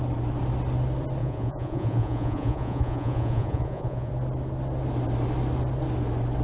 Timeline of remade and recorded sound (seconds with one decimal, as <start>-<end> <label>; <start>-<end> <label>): 0.0-1.2 recorded; 1.2-4.1 remade; 4.1-6.4 recorded